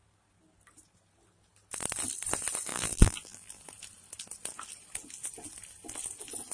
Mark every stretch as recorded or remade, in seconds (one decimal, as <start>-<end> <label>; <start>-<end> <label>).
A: 0.0-2.7 recorded; 2.7-3.6 remade; 3.6-6.5 recorded